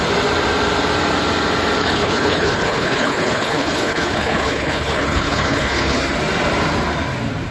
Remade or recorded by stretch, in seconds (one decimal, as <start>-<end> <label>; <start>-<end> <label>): 0.0-1.8 recorded; 1.8-6.0 remade; 6.0-7.5 recorded